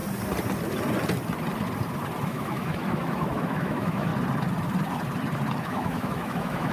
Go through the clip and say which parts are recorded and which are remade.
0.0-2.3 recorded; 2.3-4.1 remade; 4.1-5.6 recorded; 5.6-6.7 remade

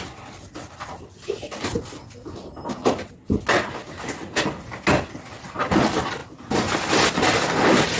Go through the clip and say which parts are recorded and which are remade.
0.0-8.0 recorded